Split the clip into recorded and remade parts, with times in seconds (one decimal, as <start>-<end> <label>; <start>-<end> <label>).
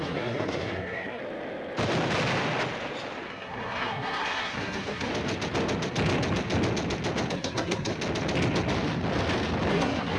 0.0-1.2 remade; 1.2-3.3 recorded; 3.3-5.1 remade; 5.1-7.3 recorded; 7.3-7.9 remade; 7.9-9.7 recorded; 9.7-10.2 remade